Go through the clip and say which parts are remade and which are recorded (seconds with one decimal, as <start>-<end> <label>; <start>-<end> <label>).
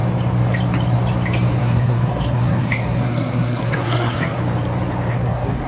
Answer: 0.0-1.6 recorded; 1.6-4.4 remade; 4.4-5.1 recorded; 5.1-5.7 remade